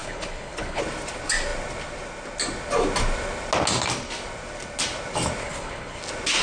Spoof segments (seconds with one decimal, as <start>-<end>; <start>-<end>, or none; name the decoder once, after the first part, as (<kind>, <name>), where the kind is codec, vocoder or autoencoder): 0.0-0.8 (codec, HILCodec); 5.4-6.0